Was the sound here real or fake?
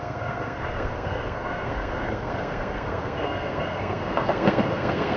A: fake